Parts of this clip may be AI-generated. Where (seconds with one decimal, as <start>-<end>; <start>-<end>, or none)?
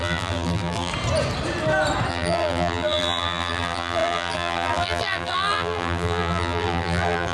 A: 0.0-0.9; 2.1-7.3